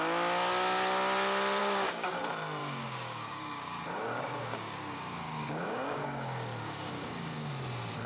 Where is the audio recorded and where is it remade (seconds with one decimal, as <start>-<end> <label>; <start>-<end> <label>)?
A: 0.0-1.6 recorded; 1.6-2.2 remade; 2.2-2.6 recorded; 2.6-7.5 remade; 7.5-8.1 recorded